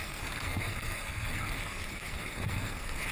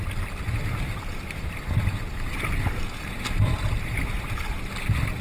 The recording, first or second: second